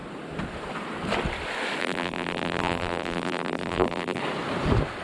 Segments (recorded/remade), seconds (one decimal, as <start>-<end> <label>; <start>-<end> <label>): 0.0-1.8 recorded; 1.8-4.2 remade; 4.2-5.0 recorded